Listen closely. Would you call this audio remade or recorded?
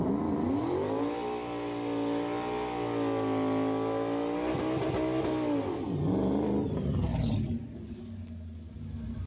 recorded